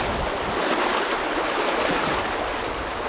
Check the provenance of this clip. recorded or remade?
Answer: recorded